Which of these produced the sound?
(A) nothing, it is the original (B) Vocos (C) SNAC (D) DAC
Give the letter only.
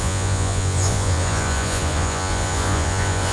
B